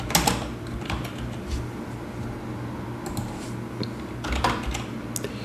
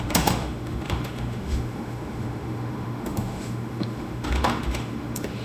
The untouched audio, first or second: first